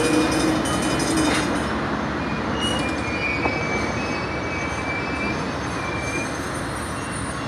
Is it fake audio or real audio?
real